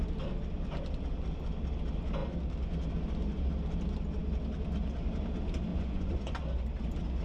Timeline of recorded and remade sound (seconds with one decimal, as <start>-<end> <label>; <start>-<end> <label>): 0.0-5.7 recorded; 5.7-6.4 remade; 6.4-7.2 recorded